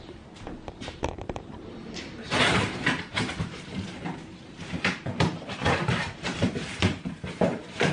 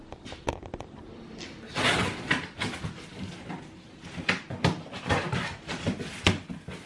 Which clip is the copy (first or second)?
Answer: first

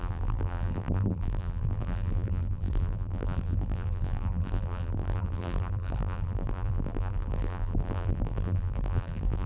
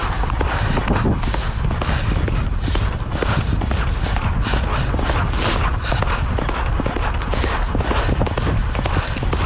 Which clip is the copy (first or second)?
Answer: first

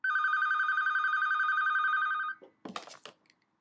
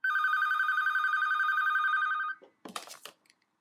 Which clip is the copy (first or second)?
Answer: second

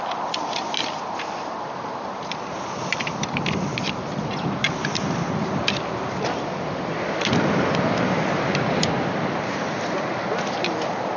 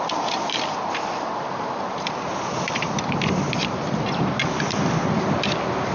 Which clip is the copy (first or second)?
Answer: first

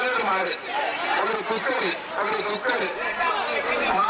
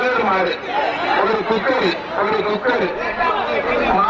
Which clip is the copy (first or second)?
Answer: first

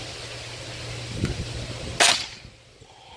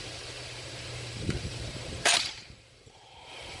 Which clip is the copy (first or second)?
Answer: second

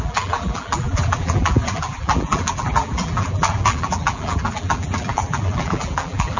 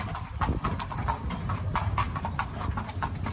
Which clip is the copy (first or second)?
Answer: first